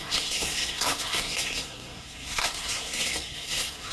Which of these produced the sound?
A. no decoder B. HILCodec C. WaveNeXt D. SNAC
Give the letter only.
D